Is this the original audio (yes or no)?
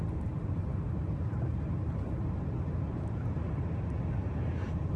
no